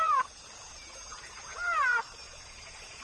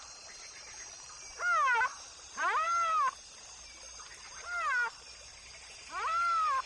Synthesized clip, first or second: first